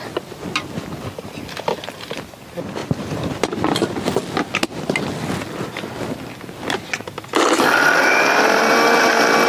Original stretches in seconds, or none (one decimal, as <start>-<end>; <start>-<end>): 0.0-9.5